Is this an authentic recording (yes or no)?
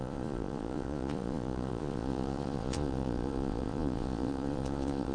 no